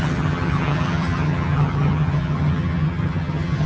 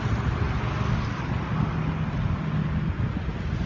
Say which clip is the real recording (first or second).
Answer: second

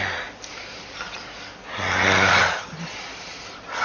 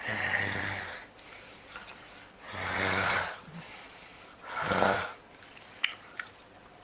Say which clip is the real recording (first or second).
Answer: first